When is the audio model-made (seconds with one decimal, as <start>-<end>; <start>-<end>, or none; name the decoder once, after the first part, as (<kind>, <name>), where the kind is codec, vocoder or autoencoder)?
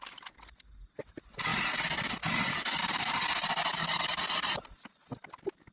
none